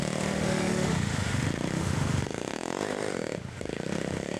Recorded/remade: remade